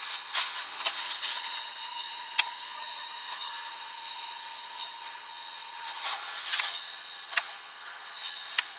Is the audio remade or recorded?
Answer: remade